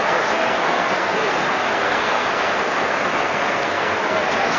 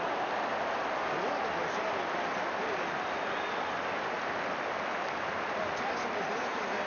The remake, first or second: first